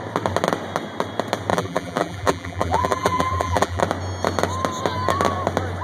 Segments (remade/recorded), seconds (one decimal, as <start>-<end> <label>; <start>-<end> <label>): 0.0-1.5 recorded; 1.5-3.8 remade; 3.8-5.8 recorded